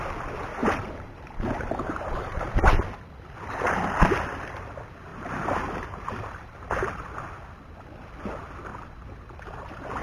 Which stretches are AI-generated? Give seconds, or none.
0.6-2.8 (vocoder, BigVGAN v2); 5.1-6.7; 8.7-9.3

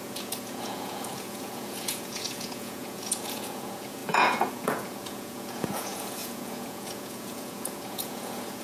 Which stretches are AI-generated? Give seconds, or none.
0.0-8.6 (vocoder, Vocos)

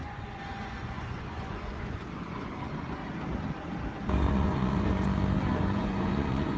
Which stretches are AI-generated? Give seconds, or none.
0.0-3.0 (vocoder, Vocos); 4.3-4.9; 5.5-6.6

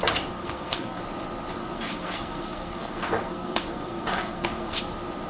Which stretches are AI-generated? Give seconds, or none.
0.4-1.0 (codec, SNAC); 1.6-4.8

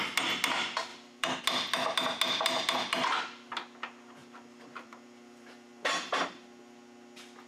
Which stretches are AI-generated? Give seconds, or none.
0.9-1.4 (vocoder, BigVGAN v2); 4.2-5.8

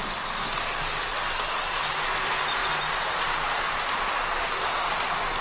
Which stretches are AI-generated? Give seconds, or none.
none

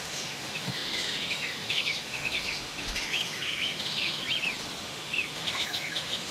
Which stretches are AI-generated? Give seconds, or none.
0.0-4.2 (autoencoder, DAC-VAE); 4.8-6.3

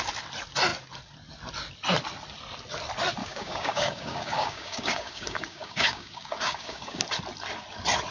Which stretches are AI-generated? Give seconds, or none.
3.2-7.0 (codec, DAC)